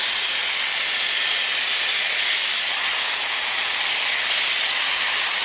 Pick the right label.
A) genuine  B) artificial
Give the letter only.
A